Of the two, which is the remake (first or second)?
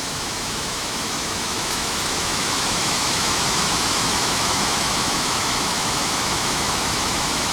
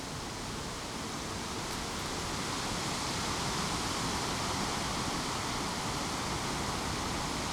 first